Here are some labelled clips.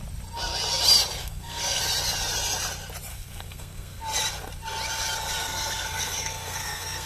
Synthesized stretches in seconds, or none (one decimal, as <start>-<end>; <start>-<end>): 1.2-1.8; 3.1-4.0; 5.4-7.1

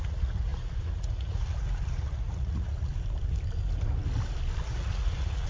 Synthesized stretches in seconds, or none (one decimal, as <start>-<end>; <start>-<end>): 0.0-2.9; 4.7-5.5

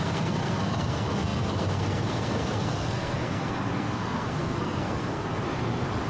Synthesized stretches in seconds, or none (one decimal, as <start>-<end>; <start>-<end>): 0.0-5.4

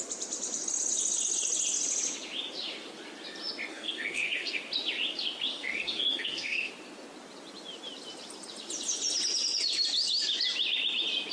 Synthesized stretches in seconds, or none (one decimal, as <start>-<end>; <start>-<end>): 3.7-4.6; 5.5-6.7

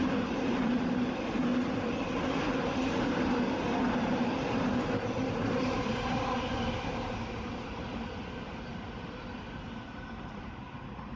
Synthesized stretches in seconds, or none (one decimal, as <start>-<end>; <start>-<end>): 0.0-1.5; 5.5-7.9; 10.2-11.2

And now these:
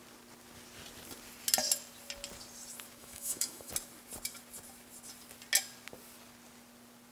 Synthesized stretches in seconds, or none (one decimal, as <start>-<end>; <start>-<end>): 3.0-3.7